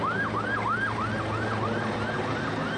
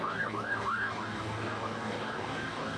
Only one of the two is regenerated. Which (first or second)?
second